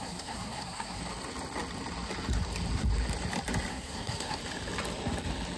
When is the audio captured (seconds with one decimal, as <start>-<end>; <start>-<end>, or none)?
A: 1.0-3.7; 4.4-5.6